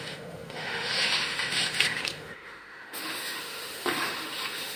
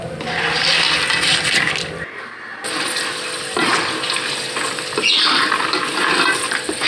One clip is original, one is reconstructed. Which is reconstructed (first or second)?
first